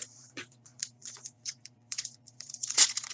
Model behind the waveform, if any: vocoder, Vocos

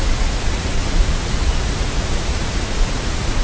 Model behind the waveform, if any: vocoder, Vocos